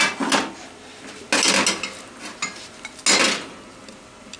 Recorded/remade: recorded